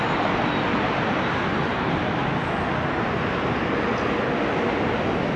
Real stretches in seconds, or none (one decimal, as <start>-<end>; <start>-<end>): 0.0-2.0; 2.6-5.4